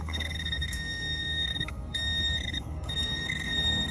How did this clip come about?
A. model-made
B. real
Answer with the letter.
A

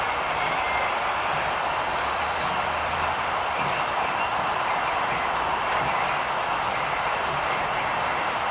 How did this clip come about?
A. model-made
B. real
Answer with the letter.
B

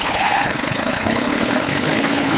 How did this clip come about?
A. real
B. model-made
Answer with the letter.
B